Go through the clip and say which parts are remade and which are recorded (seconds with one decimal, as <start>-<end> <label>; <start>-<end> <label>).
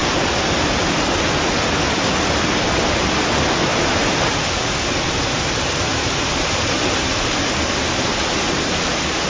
0.0-3.7 recorded; 3.7-5.2 remade; 5.2-5.9 recorded; 5.9-6.8 remade; 6.8-9.3 recorded